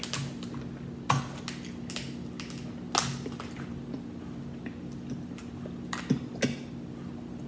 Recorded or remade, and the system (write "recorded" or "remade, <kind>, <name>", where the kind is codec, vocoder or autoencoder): recorded